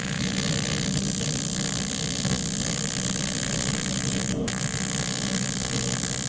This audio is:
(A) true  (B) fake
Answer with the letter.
A